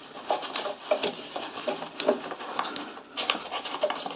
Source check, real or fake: real